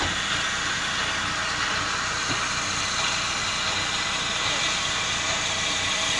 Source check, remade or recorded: recorded